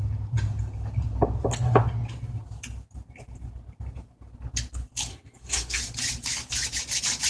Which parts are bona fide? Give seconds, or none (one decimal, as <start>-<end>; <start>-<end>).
0.0-5.1; 5.8-7.3